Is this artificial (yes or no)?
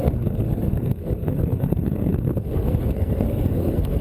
yes